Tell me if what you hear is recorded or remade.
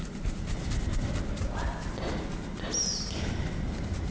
recorded